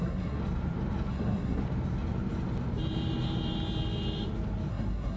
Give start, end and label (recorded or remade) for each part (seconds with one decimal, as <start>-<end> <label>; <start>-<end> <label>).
0.0-0.4 remade; 0.4-1.1 recorded; 1.1-1.6 remade; 1.6-4.7 recorded; 4.7-5.2 remade